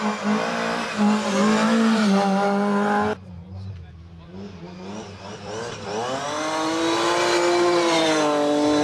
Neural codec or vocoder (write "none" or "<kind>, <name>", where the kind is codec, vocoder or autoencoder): none